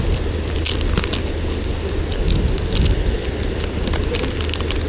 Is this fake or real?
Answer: real